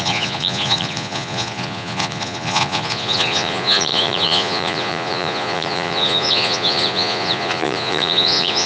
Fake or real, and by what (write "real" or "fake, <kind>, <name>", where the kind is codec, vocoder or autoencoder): fake, vocoder, Vocos